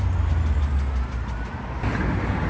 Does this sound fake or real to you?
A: real